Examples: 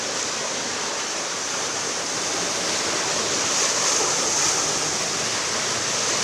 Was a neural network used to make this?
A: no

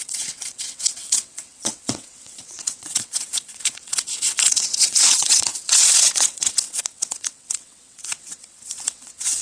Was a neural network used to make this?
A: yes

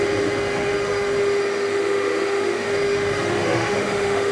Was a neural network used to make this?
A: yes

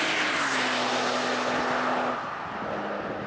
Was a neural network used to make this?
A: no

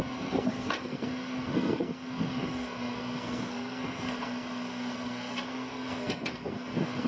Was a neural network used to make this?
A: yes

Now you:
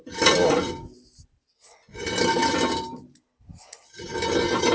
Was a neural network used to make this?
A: no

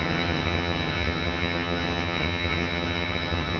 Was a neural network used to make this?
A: yes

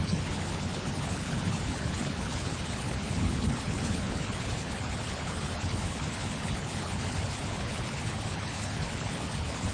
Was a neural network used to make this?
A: yes